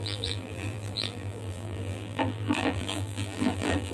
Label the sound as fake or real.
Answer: fake